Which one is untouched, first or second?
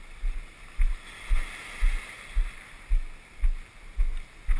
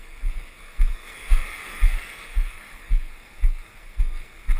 first